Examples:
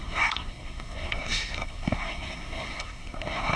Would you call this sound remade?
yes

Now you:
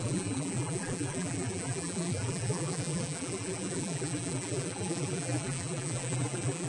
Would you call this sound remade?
yes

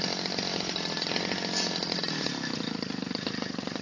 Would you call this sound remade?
no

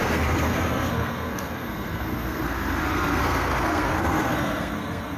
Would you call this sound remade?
yes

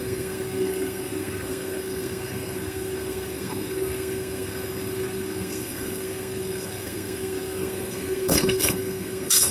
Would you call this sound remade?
yes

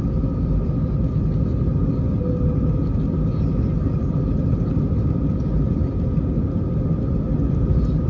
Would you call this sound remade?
no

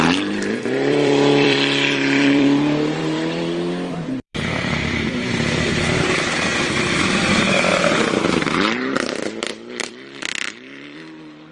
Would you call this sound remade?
yes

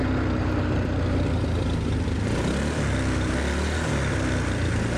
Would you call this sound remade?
no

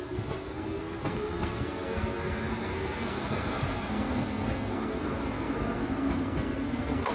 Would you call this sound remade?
yes